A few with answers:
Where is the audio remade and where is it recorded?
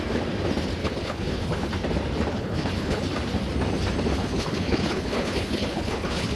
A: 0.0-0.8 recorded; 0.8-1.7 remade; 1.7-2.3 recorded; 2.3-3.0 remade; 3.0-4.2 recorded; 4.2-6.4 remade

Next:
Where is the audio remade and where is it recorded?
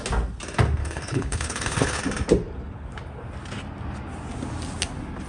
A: 0.0-0.8 recorded; 0.8-2.0 remade; 2.0-5.3 recorded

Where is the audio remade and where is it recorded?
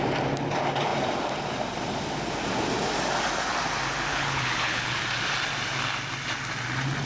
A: 0.0-4.1 recorded; 4.1-5.0 remade; 5.0-7.1 recorded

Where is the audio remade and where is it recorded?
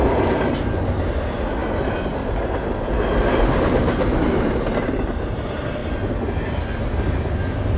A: 0.0-7.8 recorded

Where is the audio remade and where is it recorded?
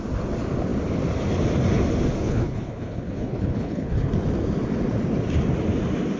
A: 0.0-2.2 recorded; 2.2-4.1 remade; 4.1-6.2 recorded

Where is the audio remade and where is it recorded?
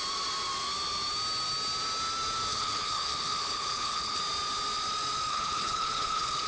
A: 0.0-2.5 recorded; 2.5-4.2 remade; 4.2-5.3 recorded; 5.3-6.5 remade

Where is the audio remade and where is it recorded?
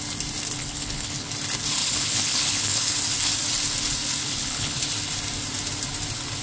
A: 0.0-0.6 recorded; 0.6-1.3 remade; 1.3-1.8 recorded; 1.8-2.9 remade; 2.9-4.2 recorded; 4.2-4.8 remade; 4.8-6.4 recorded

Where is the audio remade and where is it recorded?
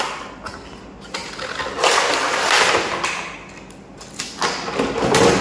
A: 0.0-5.4 recorded